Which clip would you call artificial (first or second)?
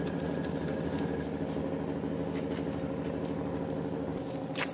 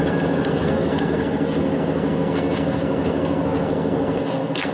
second